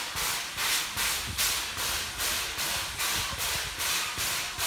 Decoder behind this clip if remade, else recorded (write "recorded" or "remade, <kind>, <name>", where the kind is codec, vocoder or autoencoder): recorded